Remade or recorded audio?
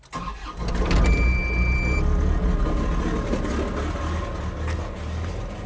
recorded